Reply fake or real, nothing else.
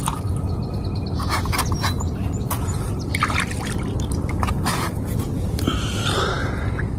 real